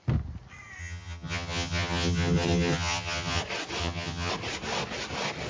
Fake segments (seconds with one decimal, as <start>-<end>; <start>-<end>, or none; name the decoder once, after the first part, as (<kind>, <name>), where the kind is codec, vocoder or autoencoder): 0.8-3.4 (vocoder, HiFi-GAN); 3.8-4.3

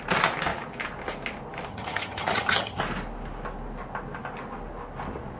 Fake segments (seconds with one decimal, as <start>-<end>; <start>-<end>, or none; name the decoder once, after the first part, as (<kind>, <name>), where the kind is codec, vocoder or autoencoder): 1.7-2.8 (vocoder, HiFi-GAN)

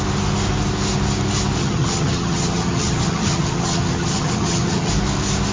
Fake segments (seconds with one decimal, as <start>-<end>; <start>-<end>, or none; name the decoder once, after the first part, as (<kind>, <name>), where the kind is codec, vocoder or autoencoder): 1.6-4.9 (vocoder, HiFi-GAN)